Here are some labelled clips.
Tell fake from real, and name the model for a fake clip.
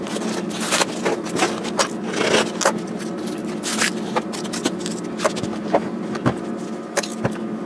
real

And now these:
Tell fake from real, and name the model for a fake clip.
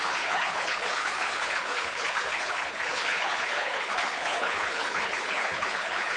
fake, codec, HILCodec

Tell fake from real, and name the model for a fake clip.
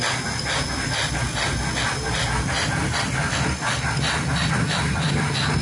real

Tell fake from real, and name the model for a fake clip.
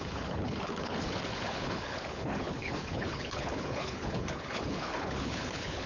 fake, codec, HILCodec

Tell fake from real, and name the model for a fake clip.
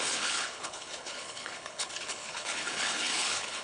fake, codec, HILCodec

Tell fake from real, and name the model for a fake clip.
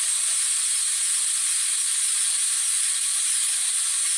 real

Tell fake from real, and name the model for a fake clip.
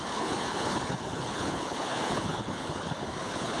fake, codec, HILCodec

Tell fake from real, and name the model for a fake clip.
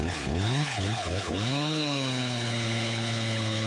fake, codec, HILCodec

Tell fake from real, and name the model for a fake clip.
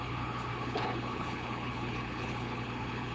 fake, codec, HILCodec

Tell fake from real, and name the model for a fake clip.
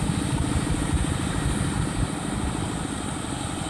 real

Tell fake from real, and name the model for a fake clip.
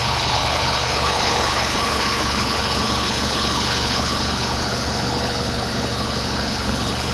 fake, codec, HILCodec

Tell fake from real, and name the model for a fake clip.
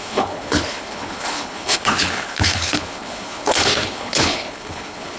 fake, codec, HILCodec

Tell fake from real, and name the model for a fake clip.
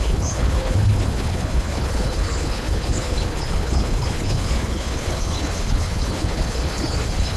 fake, codec, HILCodec